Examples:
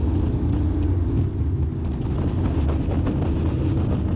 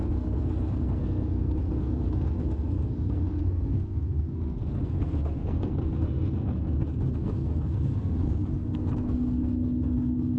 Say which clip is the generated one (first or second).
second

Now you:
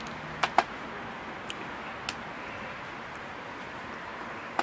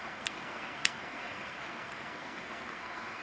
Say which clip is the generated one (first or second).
second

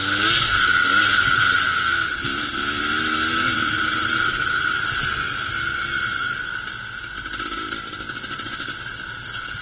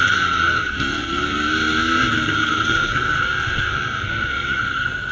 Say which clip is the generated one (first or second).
second